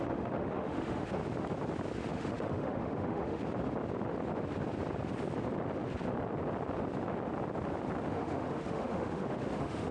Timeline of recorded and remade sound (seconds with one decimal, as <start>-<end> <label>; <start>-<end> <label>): 0.0-1.2 remade; 1.2-2.1 recorded; 2.1-3.4 remade; 3.4-8.1 recorded; 8.1-9.9 remade